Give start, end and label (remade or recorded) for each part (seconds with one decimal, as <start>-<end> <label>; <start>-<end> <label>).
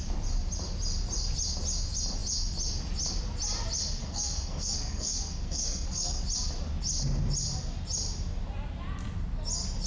0.0-4.0 recorded; 4.0-6.2 remade; 6.2-9.9 recorded